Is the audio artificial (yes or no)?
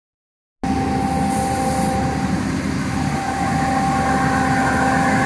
no